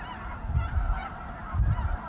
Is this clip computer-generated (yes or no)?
yes